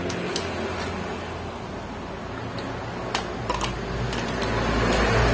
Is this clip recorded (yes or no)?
yes